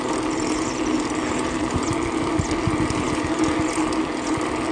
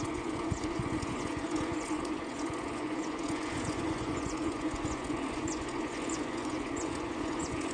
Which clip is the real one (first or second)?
first